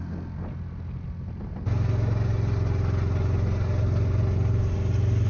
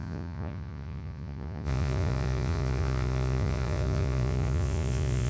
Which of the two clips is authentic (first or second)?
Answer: first